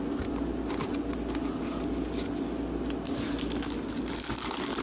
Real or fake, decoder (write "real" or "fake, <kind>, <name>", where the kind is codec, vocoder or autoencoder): real